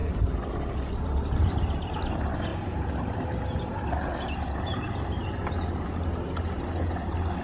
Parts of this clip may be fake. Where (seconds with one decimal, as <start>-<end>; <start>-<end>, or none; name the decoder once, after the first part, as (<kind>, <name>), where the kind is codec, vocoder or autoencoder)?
2.5-4.1 (vocoder, BigVGAN v2); 4.7-5.2